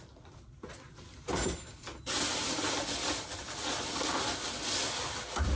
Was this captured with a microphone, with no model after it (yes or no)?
yes